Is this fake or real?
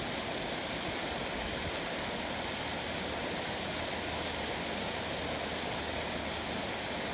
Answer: real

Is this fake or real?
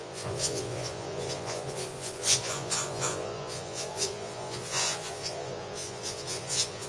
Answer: fake